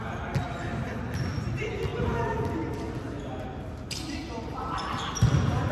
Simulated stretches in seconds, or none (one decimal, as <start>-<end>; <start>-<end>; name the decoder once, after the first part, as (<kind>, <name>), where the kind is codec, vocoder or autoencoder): none